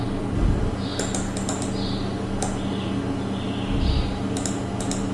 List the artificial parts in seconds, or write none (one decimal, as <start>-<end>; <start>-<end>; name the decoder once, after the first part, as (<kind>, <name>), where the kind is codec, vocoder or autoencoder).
none

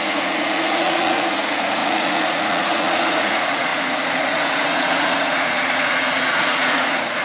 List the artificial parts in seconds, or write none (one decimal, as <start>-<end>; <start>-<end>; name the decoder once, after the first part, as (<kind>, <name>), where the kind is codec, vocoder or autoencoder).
0.0-7.2 (vocoder, Vocos)

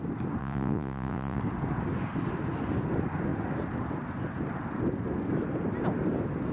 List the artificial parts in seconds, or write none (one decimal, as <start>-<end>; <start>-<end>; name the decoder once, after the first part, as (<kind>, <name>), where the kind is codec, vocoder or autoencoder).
0.4-1.4 (vocoder, Vocos)

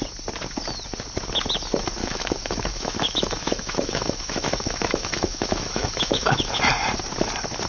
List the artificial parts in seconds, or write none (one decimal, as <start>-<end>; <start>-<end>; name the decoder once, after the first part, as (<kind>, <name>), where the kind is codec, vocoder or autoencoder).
2.0-6.6 (autoencoder, DAC-VAE)

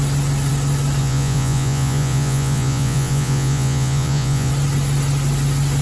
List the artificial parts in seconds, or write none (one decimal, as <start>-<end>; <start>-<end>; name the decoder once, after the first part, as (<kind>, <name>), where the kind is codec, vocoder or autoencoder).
1.0-4.5 (vocoder, Vocos)

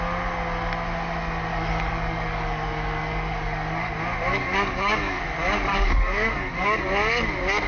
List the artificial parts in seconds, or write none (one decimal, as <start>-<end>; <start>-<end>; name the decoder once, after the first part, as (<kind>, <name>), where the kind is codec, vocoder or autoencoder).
1.5-3.9 (codec, DAC); 4.3-5.2; 5.7-6.8